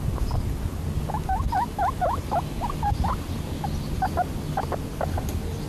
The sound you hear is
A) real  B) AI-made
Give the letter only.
A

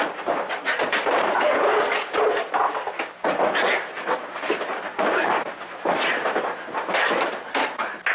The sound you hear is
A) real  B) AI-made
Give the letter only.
A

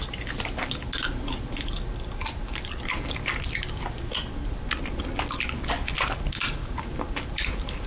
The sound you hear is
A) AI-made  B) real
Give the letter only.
B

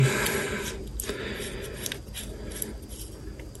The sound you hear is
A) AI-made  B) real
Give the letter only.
B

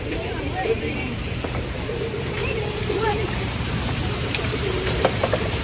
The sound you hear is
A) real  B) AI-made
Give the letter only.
B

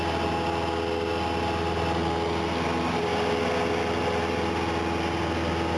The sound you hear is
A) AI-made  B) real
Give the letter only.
B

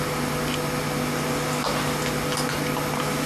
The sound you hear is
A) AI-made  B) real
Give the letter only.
B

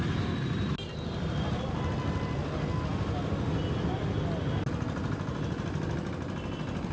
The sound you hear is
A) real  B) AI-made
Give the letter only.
A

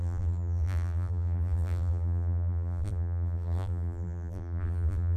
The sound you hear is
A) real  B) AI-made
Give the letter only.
B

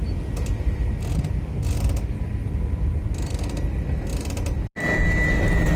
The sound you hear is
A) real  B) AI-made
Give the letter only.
A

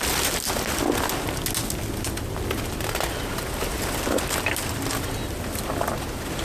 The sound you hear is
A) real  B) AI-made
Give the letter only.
A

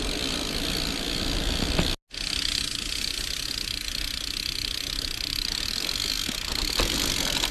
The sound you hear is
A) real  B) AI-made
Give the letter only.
A